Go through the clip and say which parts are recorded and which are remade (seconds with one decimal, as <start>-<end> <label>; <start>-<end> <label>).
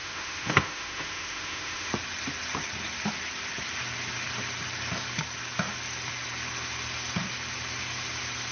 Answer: 0.0-1.9 remade; 1.9-8.5 recorded